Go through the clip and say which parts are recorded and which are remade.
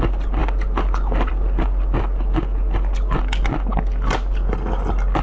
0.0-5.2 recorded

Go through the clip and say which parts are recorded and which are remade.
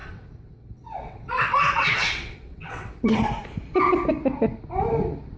0.0-2.9 remade; 2.9-5.4 recorded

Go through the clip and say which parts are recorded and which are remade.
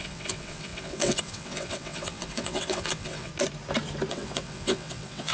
0.0-3.3 remade; 3.3-4.1 recorded; 4.1-5.3 remade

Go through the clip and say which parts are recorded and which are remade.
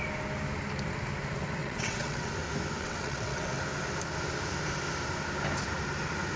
0.0-1.6 recorded; 1.6-2.3 remade; 2.3-2.8 recorded; 2.8-3.6 remade; 3.6-6.4 recorded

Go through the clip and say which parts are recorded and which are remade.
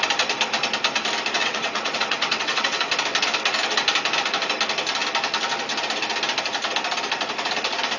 0.0-1.4 recorded; 1.4-2.9 remade; 2.9-8.0 recorded